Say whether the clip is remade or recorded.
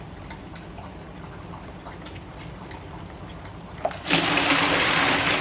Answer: recorded